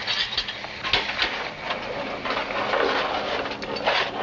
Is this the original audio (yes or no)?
yes